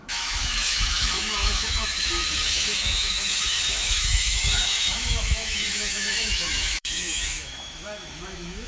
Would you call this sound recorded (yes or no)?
no